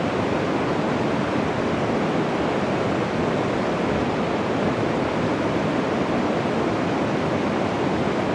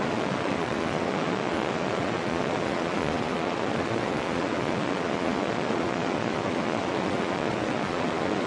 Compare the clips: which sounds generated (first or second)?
second